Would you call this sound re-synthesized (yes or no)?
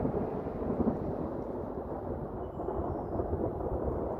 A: no